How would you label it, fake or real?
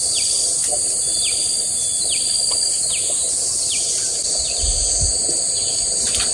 real